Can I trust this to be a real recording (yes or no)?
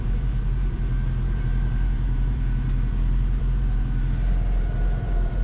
no